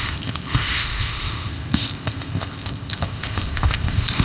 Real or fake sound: fake